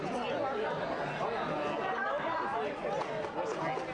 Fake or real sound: real